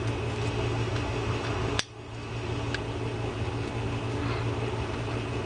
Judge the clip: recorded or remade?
recorded